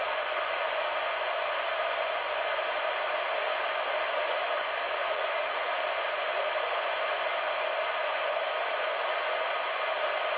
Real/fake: fake